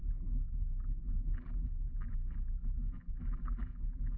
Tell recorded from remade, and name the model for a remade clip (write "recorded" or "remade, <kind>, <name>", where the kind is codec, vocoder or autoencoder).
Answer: remade, vocoder, BigVGAN v2